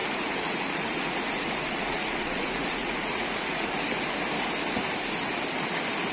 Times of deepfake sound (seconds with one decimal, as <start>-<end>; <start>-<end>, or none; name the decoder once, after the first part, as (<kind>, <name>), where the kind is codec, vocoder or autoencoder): 0.0-3.7 (vocoder, Vocos)